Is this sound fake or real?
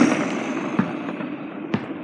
fake